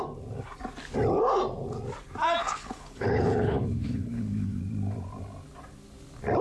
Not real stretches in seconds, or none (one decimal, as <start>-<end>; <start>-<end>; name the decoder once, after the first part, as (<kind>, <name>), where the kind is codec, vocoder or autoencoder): 2.4-4.6 (codec, HILCodec)